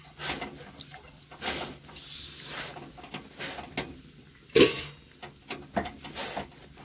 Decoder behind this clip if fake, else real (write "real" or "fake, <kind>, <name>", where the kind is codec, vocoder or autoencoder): real